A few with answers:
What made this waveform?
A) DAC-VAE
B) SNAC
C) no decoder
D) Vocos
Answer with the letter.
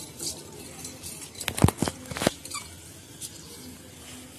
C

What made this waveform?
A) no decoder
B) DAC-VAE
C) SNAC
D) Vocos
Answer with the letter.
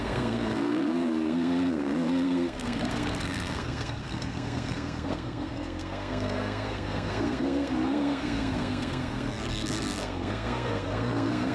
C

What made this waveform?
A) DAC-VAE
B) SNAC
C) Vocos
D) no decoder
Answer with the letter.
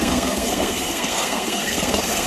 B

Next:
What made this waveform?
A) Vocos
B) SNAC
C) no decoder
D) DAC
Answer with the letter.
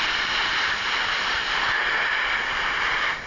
C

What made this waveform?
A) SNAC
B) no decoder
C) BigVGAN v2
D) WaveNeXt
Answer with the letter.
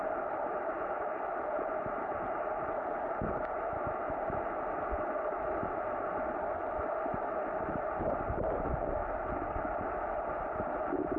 B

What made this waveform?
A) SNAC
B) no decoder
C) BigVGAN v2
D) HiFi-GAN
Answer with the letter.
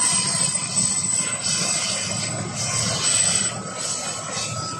B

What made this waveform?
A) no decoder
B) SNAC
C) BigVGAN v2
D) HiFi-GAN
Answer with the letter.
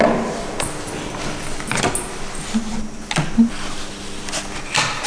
A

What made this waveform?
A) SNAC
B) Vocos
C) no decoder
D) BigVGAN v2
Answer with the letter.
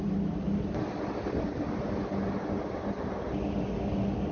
C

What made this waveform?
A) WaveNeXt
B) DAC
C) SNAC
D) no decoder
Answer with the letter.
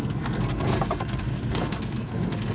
C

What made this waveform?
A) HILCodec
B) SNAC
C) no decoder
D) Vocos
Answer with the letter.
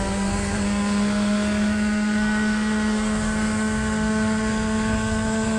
B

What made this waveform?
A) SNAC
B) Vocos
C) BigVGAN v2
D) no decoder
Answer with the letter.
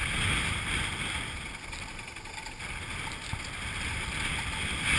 D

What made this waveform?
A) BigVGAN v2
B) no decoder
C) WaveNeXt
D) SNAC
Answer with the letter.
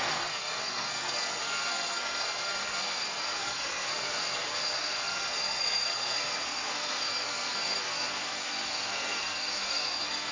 D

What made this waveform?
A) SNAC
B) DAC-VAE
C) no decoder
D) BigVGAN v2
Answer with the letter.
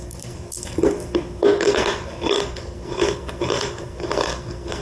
A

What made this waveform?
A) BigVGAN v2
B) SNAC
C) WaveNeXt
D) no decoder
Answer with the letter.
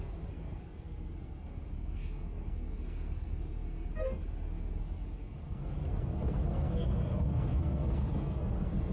B